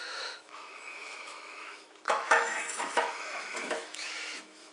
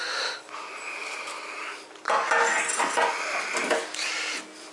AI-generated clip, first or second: first